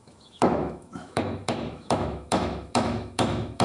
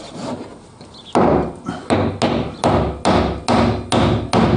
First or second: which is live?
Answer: second